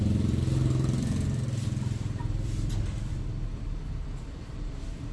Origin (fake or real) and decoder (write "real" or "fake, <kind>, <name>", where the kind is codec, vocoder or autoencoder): fake, vocoder, BigVGAN v2